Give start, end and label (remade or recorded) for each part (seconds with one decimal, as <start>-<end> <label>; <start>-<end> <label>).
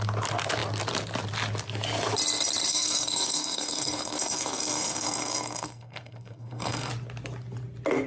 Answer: 0.0-2.7 recorded; 2.7-6.9 remade; 6.9-8.1 recorded